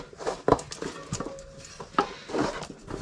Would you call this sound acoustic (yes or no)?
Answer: yes